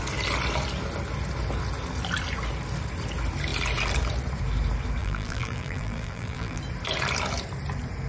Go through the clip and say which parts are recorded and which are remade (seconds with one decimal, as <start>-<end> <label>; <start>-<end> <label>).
0.0-5.0 recorded; 5.0-6.6 remade; 6.6-8.1 recorded